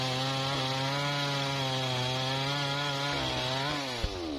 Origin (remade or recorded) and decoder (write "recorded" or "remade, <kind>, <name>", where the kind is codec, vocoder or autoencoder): recorded